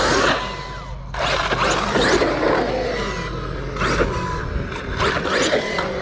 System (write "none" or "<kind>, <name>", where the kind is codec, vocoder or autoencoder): none